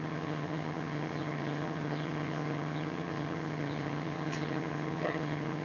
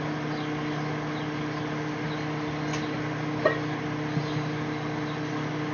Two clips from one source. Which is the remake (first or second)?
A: first